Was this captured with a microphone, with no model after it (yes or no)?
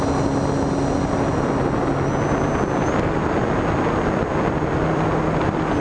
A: yes